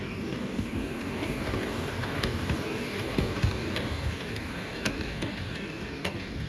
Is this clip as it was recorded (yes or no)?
no